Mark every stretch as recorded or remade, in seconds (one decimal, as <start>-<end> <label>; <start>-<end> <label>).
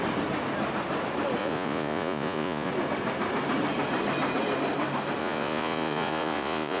0.0-1.4 recorded; 1.4-2.7 remade; 2.7-5.2 recorded; 5.2-6.8 remade